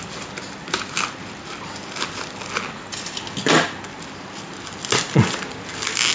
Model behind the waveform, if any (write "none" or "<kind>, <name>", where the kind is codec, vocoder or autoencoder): none